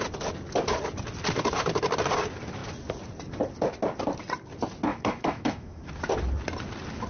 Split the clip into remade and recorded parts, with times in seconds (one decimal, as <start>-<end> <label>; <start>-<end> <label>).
0.0-4.9 recorded; 4.9-5.8 remade; 5.8-7.1 recorded